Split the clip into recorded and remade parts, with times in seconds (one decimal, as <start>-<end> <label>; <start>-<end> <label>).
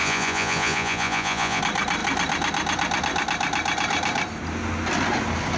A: 0.0-1.6 remade; 1.6-5.6 recorded